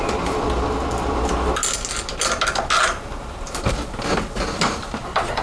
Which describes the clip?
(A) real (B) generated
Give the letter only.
A